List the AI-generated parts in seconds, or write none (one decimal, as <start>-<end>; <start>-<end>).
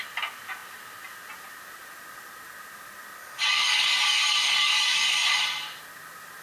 3.2-5.4